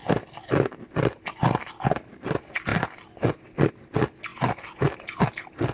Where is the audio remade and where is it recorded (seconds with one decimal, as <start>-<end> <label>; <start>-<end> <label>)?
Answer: 0.0-5.7 recorded